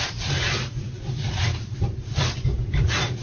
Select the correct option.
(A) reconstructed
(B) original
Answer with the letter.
B